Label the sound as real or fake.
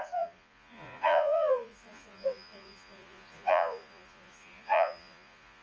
fake